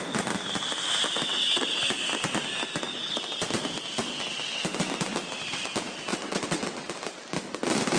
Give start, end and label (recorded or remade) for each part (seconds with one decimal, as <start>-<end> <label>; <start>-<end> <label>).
0.0-1.3 recorded; 1.3-1.8 remade; 1.8-6.1 recorded; 6.1-7.0 remade; 7.0-8.0 recorded